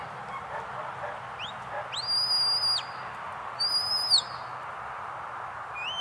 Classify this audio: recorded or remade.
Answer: recorded